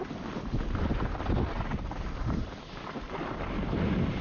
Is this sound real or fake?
real